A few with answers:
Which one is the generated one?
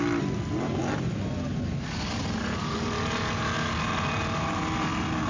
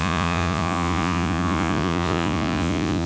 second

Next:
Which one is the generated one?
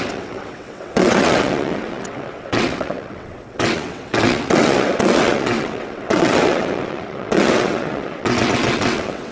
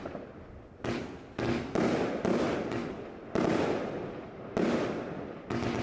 first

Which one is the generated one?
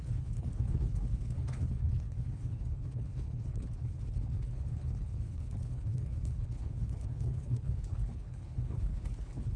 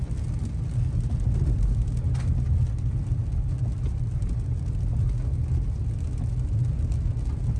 first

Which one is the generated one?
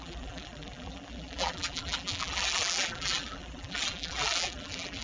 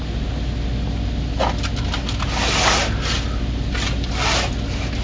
first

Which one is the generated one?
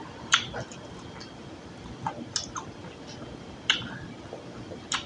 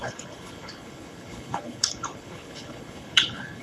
second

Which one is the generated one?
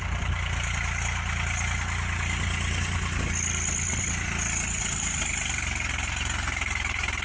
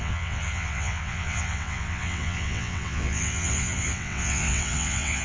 second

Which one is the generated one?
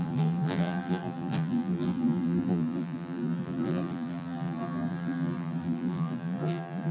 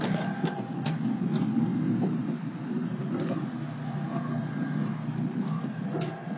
first